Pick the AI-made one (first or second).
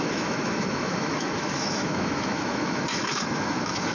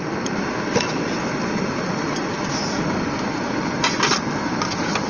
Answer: first